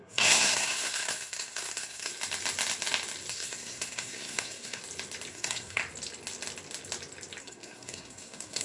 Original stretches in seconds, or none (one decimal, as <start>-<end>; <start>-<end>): 2.1-3.3; 4.8-5.3; 5.8-7.4